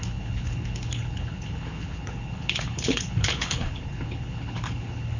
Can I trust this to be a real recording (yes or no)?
no